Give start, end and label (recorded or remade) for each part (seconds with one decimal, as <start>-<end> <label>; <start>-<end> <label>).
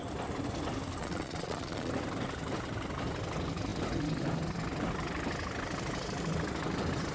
0.0-1.0 recorded; 1.0-1.9 remade; 1.9-7.1 recorded